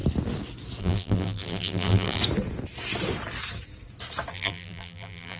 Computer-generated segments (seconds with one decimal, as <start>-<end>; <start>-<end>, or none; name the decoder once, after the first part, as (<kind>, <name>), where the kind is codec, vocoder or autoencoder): 0.8-2.2 (vocoder, BigVGAN v2); 4.3-5.4